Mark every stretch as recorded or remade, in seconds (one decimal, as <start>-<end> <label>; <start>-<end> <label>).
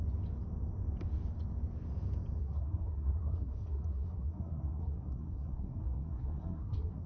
0.0-2.4 recorded; 2.4-7.1 remade